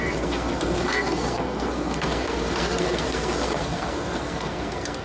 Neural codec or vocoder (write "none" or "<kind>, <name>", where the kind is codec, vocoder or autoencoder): codec, SNAC